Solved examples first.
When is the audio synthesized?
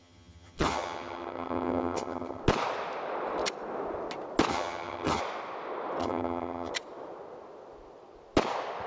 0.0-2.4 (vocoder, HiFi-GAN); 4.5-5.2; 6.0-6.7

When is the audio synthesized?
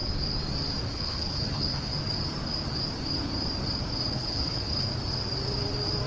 0.9-1.9 (codec, HILCodec); 4.1-4.9